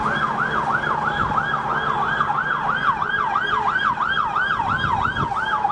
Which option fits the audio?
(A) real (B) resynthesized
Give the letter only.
A